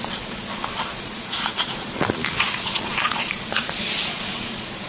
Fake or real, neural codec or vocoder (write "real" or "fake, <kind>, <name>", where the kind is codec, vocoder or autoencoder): fake, vocoder, Vocos